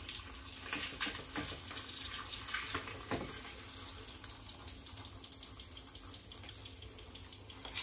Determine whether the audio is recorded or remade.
recorded